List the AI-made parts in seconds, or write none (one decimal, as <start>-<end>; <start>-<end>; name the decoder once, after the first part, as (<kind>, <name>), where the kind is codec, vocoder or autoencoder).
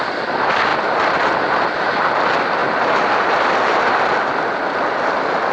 none